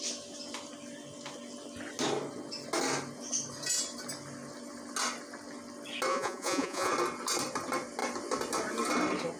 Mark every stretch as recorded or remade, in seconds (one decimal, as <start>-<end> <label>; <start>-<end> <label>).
0.0-6.1 recorded; 6.1-6.9 remade; 6.9-9.4 recorded